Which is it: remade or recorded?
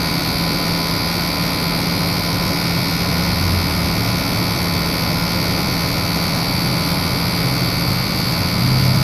recorded